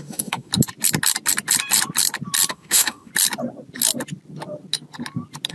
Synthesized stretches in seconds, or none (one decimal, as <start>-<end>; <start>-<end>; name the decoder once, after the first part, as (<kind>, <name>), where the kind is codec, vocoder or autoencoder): 0.0-0.5 (autoencoder, DAC-VAE); 2.5-3.1

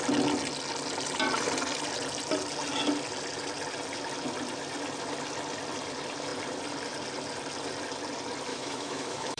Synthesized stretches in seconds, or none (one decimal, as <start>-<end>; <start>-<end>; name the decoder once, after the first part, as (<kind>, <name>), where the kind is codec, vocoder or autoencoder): 8.5-9.4 (autoencoder, DAC-VAE)

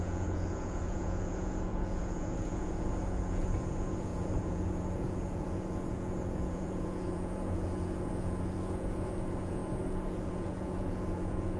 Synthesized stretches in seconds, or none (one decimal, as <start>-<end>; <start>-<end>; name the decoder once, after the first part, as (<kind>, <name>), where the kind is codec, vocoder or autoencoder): 0.0-11.6 (vocoder, Vocos)

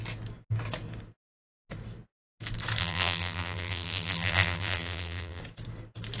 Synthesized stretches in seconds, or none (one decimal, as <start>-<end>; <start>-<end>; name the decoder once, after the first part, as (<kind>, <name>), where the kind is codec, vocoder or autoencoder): 2.8-5.4 (vocoder, BigVGAN v2)

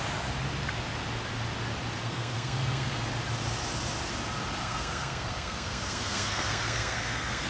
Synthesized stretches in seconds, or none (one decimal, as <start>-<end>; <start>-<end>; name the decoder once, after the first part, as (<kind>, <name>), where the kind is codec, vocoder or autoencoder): 2.0-3.1 (codec, SNAC); 4.6-7.5

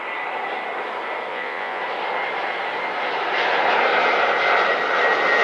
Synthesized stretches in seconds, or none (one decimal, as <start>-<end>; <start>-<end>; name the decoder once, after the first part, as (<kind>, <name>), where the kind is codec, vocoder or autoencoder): 1.3-1.8 (vocoder, Vocos)

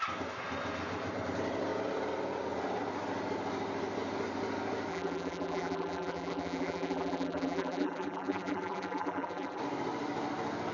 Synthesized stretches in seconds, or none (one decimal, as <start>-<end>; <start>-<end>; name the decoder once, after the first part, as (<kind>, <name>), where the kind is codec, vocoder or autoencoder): 4.9-9.6 (vocoder, BigVGAN v2)

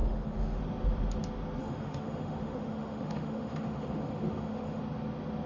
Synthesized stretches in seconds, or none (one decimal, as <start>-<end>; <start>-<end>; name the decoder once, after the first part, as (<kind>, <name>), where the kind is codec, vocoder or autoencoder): 0.0-0.6 (autoencoder, DAC-VAE); 1.6-4.8